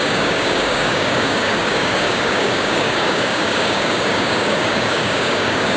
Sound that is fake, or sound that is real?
fake